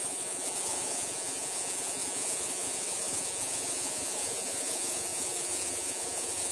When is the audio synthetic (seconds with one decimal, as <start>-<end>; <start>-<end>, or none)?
0.0-6.5